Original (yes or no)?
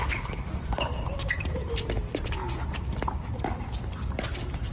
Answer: no